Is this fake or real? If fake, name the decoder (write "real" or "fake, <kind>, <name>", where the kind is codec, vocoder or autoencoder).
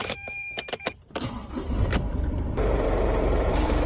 fake, vocoder, BigVGAN v2